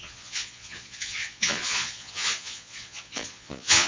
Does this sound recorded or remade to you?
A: remade